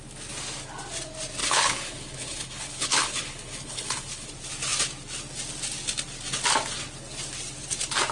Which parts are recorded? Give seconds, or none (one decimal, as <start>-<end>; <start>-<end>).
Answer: 0.0-1.4; 4.3-8.1